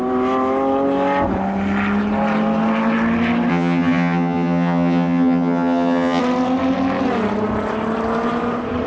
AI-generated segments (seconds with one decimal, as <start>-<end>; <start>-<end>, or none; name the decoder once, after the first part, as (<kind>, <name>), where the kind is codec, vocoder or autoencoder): 3.5-6.2 (vocoder, HiFi-GAN)